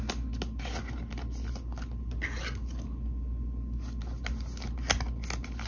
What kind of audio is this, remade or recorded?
recorded